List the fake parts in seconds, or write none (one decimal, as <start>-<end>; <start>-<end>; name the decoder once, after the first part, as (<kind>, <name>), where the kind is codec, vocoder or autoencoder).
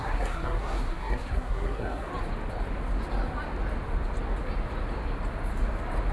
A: 0.0-2.1 (codec, SNAC)